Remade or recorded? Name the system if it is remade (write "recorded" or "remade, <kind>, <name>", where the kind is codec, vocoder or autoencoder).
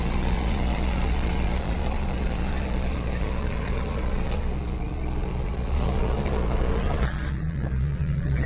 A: remade, vocoder, Vocos